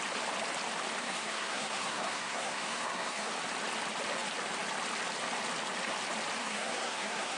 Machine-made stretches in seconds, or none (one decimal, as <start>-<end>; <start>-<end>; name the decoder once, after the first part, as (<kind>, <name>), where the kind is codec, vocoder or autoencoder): 1.0-3.3 (codec, SNAC); 6.4-7.4